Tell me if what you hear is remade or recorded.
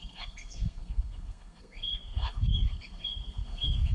remade